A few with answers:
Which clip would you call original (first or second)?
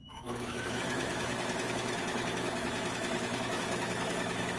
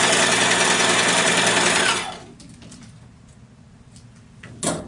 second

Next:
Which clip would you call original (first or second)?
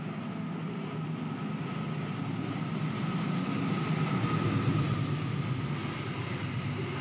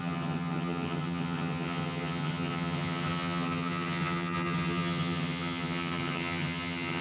first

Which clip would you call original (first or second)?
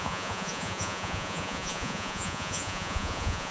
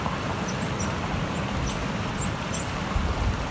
second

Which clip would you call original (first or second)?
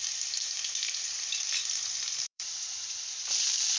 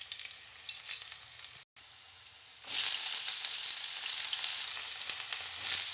second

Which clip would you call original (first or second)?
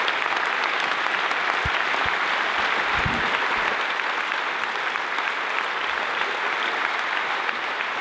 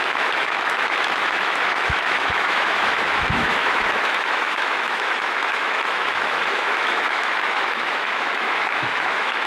first